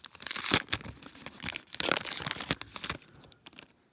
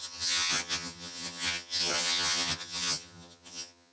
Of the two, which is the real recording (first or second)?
first